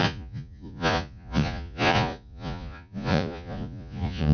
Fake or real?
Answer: fake